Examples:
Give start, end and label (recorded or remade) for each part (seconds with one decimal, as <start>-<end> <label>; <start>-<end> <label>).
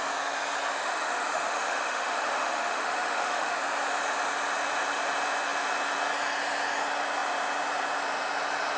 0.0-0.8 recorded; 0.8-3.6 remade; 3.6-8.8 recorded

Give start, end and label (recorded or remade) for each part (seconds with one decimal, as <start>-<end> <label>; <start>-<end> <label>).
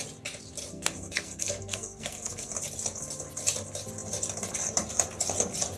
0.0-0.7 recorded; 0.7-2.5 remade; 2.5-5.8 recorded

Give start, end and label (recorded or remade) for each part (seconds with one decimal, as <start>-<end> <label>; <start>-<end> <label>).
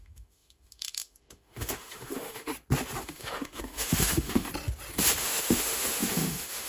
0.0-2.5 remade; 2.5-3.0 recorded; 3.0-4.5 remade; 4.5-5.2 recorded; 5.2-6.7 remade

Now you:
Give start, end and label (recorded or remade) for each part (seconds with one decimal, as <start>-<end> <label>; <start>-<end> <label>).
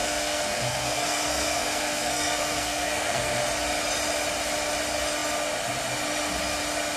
0.0-3.4 remade; 3.4-7.0 recorded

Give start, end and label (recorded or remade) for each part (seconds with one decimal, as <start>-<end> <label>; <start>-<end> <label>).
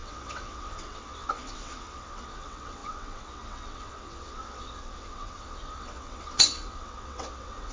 0.0-7.7 remade